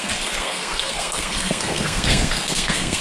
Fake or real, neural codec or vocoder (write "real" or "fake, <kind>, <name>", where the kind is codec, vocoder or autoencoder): fake, codec, SNAC